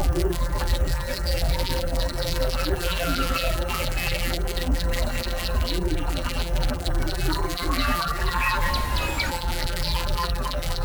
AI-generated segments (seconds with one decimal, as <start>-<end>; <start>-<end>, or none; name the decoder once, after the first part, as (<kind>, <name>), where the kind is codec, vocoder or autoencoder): 0.0-8.7 (vocoder, BigVGAN v2); 9.3-10.8